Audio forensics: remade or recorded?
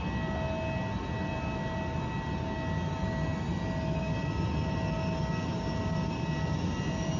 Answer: recorded